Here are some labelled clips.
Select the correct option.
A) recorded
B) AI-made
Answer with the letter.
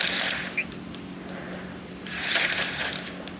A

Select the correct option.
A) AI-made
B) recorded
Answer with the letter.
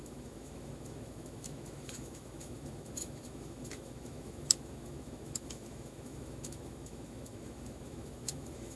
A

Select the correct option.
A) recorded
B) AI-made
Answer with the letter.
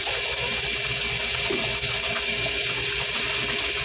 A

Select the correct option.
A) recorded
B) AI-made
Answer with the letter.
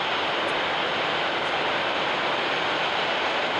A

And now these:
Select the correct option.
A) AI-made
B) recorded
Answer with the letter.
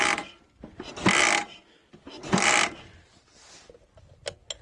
B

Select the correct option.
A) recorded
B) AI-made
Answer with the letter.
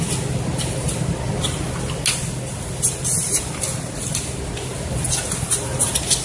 A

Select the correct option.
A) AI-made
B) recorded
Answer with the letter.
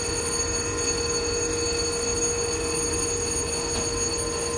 B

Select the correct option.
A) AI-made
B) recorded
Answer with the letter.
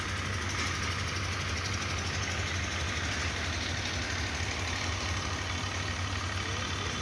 B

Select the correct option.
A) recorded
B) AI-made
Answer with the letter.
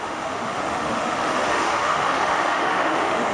B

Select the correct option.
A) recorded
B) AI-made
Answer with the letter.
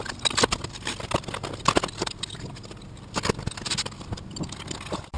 A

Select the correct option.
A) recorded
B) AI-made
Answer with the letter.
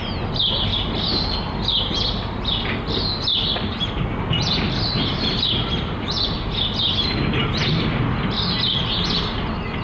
A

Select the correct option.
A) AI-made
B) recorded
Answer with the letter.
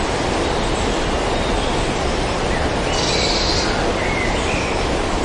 B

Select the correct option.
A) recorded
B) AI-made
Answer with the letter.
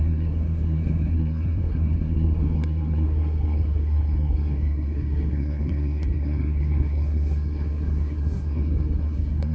B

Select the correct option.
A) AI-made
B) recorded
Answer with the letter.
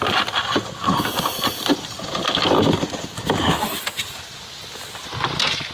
B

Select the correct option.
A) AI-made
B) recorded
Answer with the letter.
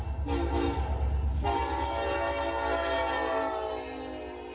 B